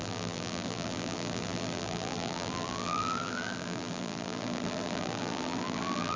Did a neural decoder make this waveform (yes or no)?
yes